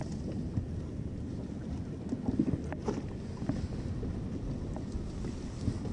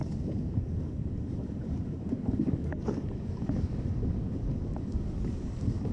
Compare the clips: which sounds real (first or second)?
first